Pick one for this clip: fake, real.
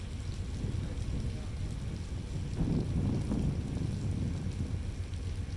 real